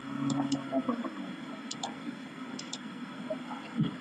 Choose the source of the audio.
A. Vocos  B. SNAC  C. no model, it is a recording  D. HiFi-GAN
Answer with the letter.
B